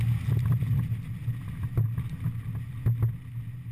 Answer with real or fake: real